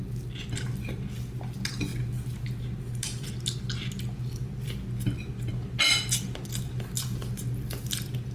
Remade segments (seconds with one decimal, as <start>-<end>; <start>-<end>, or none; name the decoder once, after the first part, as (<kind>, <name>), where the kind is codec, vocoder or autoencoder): none

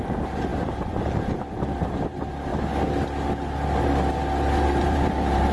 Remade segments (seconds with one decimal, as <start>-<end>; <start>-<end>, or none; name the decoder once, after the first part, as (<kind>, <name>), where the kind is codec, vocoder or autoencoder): 0.0-2.5 (vocoder, BigVGAN v2); 4.8-5.5

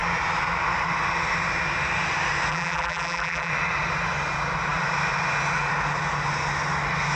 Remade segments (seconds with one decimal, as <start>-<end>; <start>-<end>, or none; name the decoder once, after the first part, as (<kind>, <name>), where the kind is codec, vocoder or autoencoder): 2.5-3.5 (vocoder, BigVGAN v2)

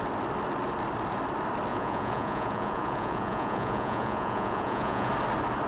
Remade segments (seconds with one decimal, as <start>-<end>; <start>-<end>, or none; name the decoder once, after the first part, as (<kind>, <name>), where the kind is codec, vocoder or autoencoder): 1.7-5.1 (vocoder, Vocos)

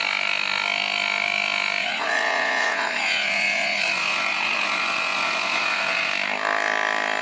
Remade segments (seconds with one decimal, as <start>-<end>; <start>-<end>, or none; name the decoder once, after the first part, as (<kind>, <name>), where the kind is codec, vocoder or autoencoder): 1.8-6.1 (vocoder, Vocos)

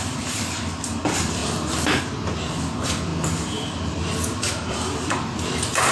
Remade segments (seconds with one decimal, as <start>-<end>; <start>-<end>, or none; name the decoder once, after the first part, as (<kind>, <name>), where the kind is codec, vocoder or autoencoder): 0.0-3.1 (vocoder, BigVGAN v2); 4.7-5.9